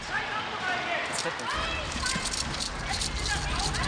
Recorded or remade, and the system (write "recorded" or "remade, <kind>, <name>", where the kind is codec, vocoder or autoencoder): recorded